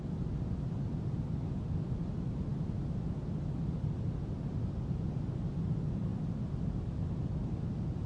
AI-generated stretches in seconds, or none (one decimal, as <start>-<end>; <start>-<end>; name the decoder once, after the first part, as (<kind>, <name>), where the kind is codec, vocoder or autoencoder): none